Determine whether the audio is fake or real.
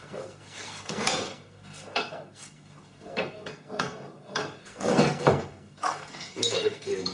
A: fake